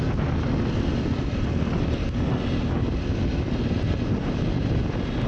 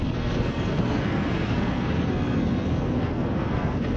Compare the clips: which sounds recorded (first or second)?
first